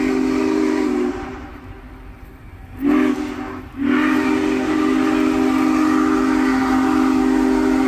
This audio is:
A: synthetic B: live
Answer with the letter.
B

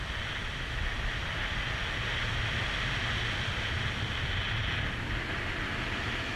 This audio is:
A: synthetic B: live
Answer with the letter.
B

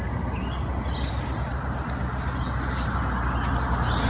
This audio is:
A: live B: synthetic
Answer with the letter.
A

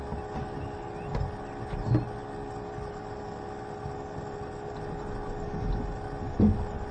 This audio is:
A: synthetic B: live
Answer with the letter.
B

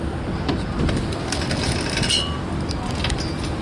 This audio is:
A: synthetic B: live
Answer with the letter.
B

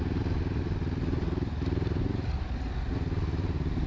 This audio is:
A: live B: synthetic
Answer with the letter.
A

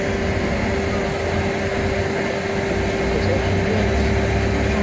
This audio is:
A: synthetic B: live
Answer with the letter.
B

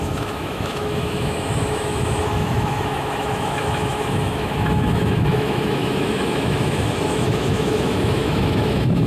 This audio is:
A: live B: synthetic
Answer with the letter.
B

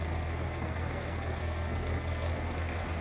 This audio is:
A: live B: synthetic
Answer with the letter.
B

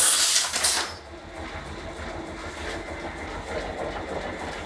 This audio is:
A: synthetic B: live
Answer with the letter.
B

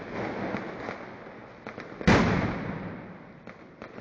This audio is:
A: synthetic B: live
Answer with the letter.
B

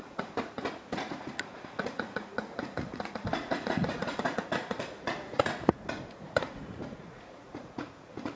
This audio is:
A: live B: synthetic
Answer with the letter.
B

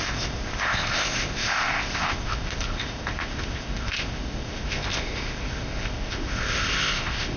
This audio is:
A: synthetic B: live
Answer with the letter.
A